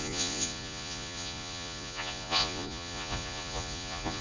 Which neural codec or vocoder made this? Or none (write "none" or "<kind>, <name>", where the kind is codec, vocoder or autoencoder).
vocoder, Vocos